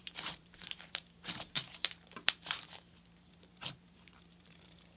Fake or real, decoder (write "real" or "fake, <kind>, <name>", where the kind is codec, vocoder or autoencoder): fake, vocoder, BigVGAN v2